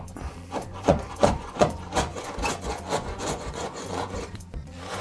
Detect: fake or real fake